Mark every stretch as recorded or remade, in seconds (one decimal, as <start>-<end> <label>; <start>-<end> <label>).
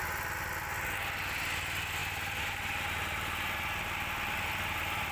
0.0-5.1 recorded